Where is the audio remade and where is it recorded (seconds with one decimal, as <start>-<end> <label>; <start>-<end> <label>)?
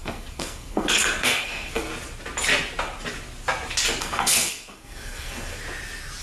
0.0-1.9 remade; 1.9-4.0 recorded; 4.0-5.6 remade; 5.6-6.2 recorded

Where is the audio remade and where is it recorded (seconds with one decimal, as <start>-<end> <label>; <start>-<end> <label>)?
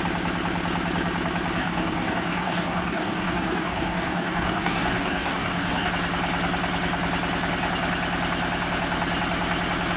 0.0-1.6 recorded; 1.6-5.9 remade; 5.9-10.0 recorded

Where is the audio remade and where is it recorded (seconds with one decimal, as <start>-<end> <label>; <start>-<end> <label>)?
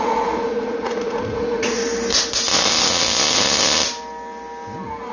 0.0-1.8 remade; 1.8-5.1 recorded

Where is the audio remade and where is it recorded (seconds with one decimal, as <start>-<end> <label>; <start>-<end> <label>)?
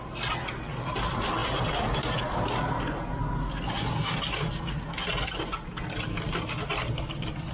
0.0-7.5 recorded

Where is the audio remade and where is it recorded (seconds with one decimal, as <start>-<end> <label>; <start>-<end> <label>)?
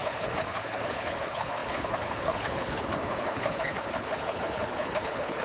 0.0-5.4 remade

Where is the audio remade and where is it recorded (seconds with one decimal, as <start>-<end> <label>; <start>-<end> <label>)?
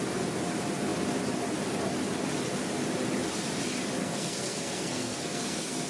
0.0-4.0 recorded; 4.0-5.9 remade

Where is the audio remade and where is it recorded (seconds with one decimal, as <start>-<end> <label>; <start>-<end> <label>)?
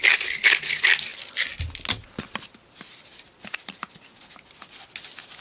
0.0-5.4 recorded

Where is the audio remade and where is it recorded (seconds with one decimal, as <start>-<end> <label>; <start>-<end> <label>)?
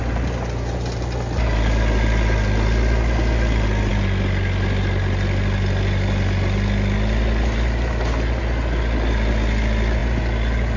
0.0-10.8 recorded